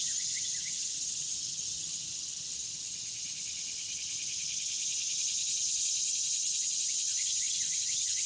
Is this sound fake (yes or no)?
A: yes